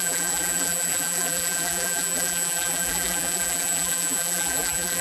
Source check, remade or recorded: remade